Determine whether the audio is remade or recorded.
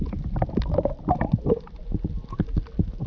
recorded